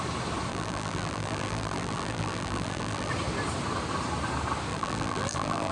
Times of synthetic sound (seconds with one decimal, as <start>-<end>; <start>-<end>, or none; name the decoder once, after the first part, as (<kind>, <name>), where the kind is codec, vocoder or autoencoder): 0.5-3.1 (vocoder, BigVGAN v2); 4.7-5.7